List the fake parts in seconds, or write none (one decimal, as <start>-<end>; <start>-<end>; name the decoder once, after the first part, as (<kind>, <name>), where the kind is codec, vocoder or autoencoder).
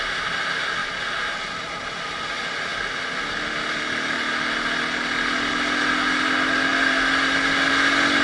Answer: 0.8-1.5 (vocoder, BigVGAN v2)